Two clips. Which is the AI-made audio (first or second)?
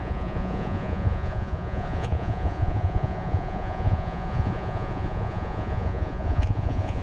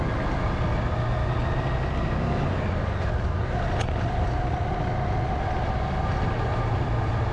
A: first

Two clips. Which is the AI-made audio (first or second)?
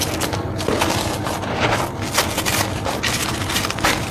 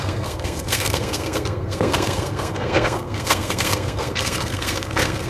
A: second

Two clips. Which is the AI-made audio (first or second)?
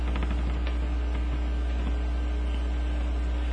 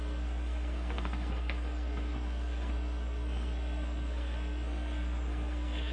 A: second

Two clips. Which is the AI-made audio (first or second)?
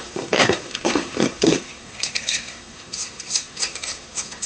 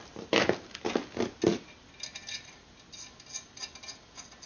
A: first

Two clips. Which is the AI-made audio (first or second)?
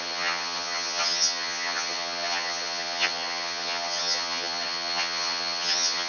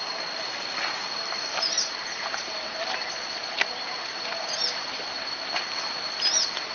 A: first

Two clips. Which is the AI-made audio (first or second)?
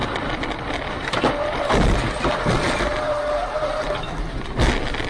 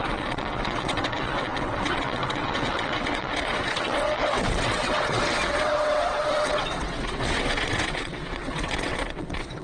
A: second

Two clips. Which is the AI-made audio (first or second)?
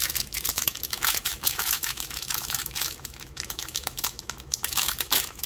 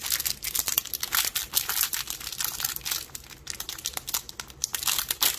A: first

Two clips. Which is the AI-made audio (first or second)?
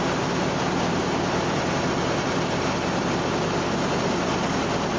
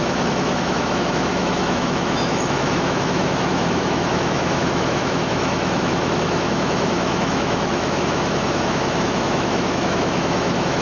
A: second